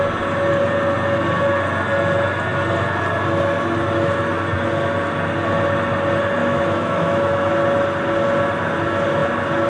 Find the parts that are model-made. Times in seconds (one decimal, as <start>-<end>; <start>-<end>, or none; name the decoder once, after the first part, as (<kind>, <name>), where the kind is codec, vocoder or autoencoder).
6.4-7.5 (autoencoder, DAC-VAE)

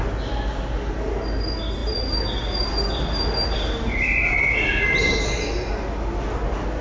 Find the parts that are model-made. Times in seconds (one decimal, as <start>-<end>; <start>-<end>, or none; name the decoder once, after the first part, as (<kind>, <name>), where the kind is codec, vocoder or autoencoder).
none

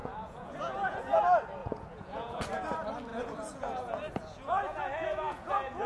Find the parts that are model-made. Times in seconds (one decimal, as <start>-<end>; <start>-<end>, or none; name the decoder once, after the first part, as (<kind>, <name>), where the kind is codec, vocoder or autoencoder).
0.0-1.2 (vocoder, Vocos); 1.6-2.4; 3.1-5.9

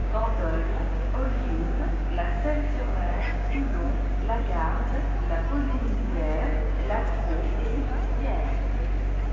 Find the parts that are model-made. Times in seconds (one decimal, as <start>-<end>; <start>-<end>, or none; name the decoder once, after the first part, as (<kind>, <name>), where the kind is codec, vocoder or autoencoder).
0.0-3.9 (codec, DAC); 5.8-7.9

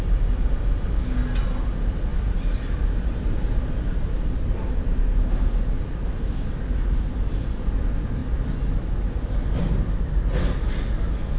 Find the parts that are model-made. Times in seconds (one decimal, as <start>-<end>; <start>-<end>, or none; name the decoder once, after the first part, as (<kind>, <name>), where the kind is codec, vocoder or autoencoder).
none

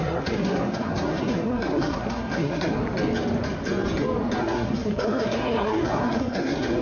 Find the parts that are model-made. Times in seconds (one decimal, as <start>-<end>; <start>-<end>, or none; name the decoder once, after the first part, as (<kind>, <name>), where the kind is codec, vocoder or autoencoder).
0.0-2.8 (codec, SNAC); 4.4-6.8

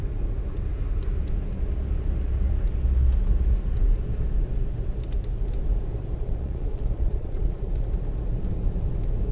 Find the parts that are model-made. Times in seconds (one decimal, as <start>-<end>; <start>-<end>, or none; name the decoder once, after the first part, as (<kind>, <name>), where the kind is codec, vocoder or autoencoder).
6.0-7.7 (vocoder, Vocos)